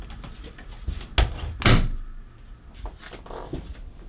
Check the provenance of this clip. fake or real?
real